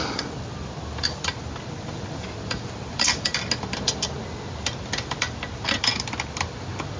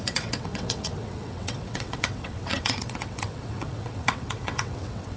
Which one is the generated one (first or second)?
second